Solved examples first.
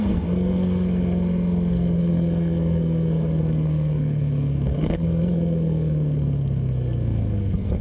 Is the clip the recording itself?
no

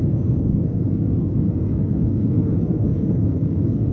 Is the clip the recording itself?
no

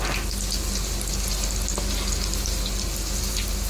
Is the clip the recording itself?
yes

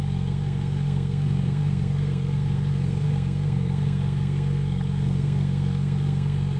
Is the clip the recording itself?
no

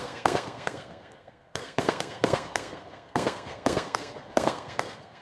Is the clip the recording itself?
no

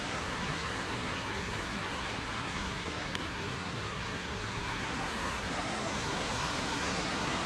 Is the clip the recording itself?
no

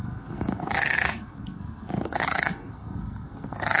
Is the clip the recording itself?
no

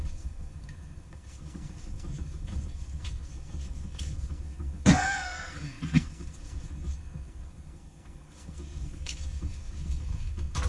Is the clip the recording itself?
no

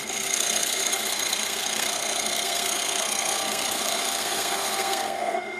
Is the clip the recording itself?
no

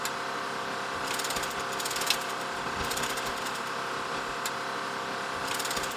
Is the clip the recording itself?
yes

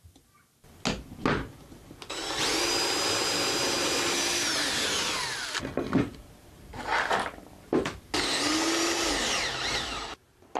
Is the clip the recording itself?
yes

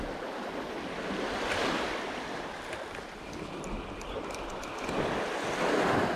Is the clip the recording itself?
yes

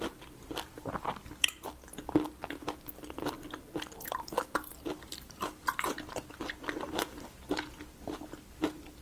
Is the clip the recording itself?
yes